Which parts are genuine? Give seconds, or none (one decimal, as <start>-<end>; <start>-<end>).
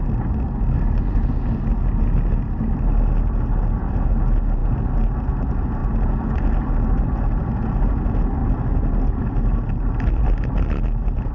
0.0-11.3